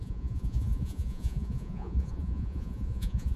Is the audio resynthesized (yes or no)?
yes